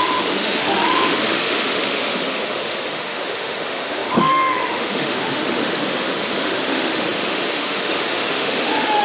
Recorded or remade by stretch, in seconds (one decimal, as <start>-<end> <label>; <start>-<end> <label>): 0.0-9.0 remade